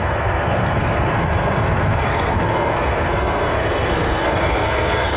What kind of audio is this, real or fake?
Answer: fake